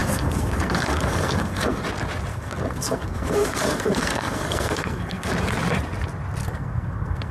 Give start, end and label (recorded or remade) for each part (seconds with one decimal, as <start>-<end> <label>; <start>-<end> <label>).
0.0-1.8 remade; 1.8-2.3 recorded; 2.3-5.3 remade; 5.3-6.4 recorded; 6.4-7.3 remade